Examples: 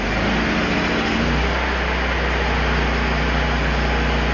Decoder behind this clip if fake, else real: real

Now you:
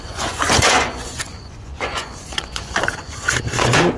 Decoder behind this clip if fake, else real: fake, vocoder, Vocos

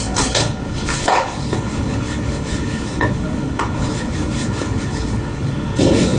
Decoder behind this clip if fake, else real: fake, codec, HILCodec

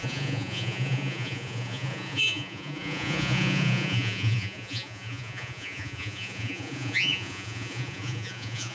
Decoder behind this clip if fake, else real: fake, vocoder, Vocos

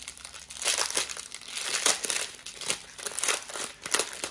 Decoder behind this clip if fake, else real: real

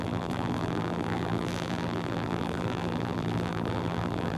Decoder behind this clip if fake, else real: fake, vocoder, BigVGAN v2